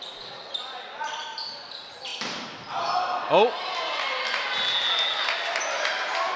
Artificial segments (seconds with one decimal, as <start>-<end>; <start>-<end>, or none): none